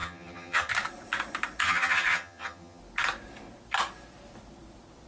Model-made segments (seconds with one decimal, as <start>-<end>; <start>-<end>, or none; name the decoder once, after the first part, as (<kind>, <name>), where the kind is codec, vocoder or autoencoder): 0.0-0.7 (vocoder, HiFi-GAN); 1.6-2.8